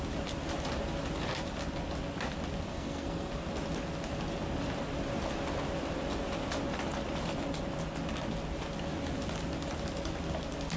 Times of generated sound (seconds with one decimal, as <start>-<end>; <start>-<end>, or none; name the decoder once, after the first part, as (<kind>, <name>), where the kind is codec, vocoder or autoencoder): 2.7-3.3 (codec, SNAC)

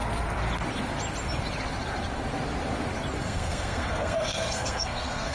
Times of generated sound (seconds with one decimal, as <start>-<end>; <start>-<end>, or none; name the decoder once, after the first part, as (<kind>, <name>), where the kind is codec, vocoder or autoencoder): 3.2-5.3 (codec, SNAC)

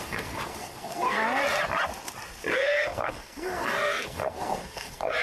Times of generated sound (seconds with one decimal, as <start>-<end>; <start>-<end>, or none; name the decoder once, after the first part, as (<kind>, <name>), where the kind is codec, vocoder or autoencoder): 0.0-1.4 (codec, SNAC); 2.5-5.2

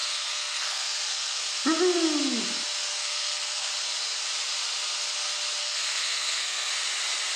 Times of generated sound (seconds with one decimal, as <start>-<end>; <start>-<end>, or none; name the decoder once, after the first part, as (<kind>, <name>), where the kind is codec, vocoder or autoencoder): 0.0-1.4 (codec, SNAC); 2.9-3.7; 5.6-6.7

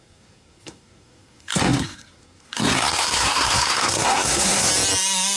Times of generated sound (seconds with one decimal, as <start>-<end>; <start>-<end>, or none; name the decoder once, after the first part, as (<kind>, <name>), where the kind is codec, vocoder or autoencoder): 0.0-4.7 (codec, SNAC)